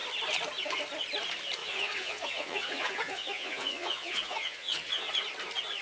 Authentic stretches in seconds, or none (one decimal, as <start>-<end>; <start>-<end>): 0.0-1.6; 5.1-5.8